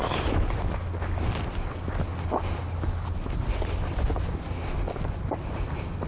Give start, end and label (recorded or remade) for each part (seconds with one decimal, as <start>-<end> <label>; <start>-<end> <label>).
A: 0.0-6.1 recorded